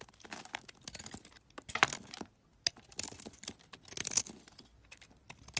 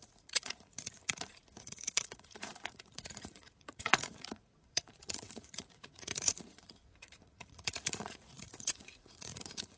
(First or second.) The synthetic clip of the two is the second